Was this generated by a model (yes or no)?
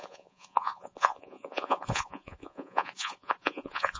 yes